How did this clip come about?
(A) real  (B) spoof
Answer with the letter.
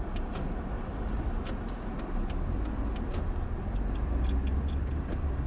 A